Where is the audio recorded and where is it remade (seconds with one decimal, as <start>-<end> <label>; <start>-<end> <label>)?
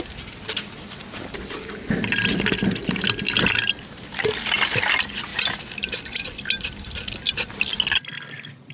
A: 0.0-8.7 recorded